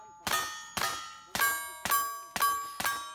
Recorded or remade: recorded